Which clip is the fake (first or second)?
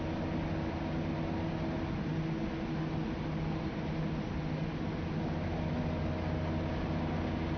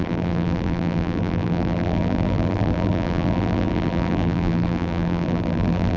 second